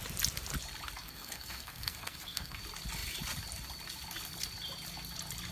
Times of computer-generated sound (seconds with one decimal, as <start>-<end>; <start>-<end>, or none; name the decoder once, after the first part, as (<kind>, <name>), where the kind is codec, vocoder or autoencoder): 1.0-2.6 (codec, SNAC)